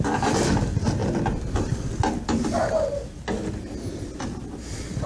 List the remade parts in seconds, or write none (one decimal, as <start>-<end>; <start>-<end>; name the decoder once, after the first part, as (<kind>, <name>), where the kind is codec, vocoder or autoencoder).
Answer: none